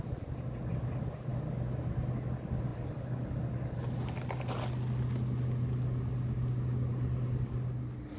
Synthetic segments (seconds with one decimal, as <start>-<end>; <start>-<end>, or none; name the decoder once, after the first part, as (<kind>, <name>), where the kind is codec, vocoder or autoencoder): none